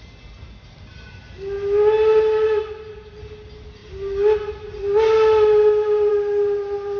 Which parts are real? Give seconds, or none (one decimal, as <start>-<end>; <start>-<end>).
0.0-7.0